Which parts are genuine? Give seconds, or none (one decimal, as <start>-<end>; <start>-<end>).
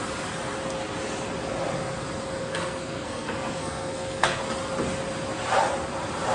0.0-2.4; 4.4-6.3